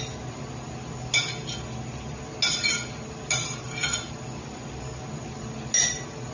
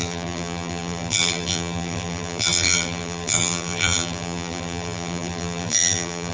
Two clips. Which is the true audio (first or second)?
first